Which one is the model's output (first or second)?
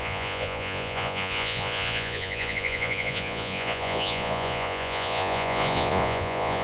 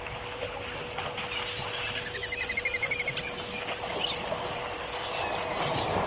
first